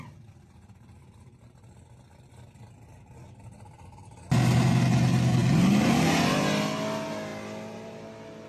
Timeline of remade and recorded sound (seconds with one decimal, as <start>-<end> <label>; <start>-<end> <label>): 0.0-8.5 recorded